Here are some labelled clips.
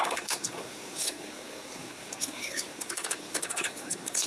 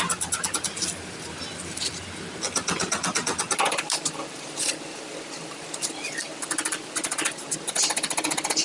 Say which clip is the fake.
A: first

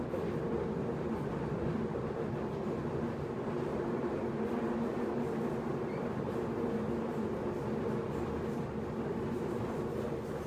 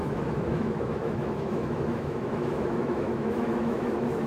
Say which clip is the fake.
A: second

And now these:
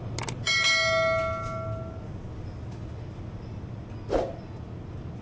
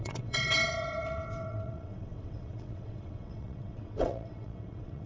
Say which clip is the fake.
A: second